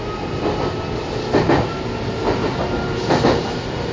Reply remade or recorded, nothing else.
recorded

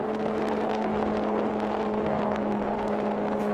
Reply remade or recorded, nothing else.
remade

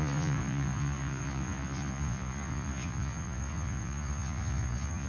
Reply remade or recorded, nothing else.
remade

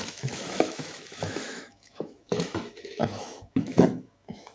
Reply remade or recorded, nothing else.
remade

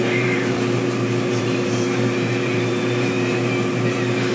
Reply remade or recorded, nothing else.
remade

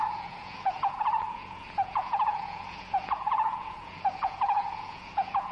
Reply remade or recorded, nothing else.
remade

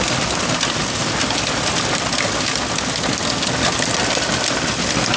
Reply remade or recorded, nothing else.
recorded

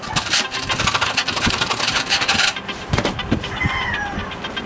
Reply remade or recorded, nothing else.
remade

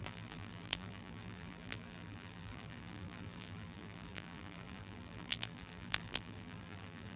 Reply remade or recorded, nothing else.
remade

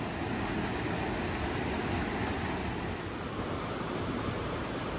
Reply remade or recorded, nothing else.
recorded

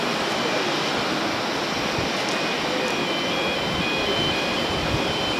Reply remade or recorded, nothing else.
recorded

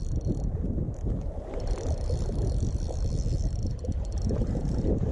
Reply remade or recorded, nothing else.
recorded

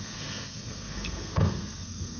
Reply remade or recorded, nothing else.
remade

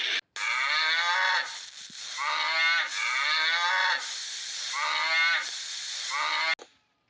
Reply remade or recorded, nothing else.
recorded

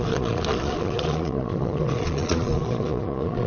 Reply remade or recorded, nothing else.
remade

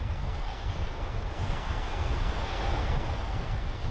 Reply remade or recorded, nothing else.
remade